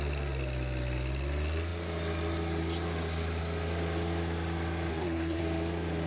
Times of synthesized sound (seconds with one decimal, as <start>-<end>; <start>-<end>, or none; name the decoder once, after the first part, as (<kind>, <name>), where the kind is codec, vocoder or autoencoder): 4.9-5.4 (codec, SNAC)